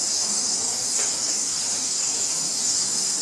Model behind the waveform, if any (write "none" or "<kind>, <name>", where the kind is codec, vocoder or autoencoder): codec, DAC